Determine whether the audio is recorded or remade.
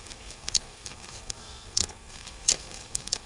remade